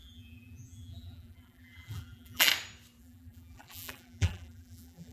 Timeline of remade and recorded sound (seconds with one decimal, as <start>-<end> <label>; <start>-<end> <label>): 0.0-2.5 remade; 2.5-3.0 recorded; 3.0-5.1 remade